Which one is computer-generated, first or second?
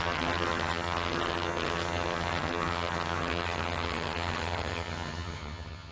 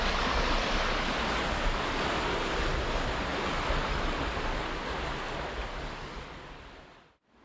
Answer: first